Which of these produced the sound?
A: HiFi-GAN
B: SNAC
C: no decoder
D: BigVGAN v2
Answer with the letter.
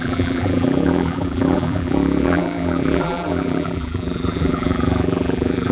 D